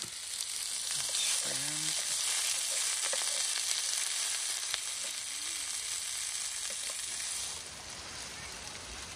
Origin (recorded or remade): recorded